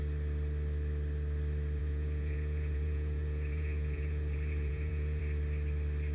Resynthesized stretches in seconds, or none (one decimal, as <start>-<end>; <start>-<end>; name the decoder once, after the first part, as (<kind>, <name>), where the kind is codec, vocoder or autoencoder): 1.8-5.2 (vocoder, Vocos)